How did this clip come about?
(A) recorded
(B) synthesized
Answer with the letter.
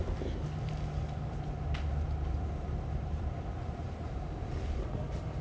B